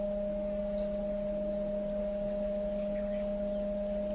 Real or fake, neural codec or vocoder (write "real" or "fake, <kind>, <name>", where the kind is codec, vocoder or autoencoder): real